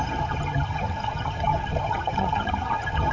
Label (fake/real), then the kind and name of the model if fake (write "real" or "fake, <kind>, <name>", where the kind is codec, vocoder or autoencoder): fake, vocoder, HiFi-GAN